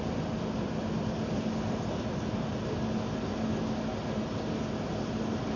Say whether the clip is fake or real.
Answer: real